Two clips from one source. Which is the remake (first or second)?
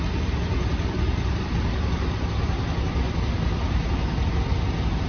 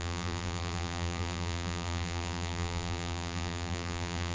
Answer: second